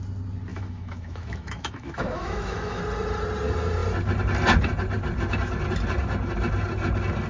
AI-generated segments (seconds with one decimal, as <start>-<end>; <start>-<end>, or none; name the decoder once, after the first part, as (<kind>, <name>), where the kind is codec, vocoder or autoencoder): 0.5-2.8 (autoencoder, DAC-VAE)